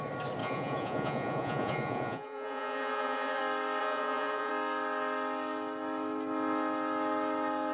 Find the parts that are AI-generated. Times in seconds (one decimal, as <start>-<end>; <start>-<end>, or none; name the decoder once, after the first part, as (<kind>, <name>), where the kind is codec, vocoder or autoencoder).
0.4-3.4 (vocoder, Vocos); 3.8-4.5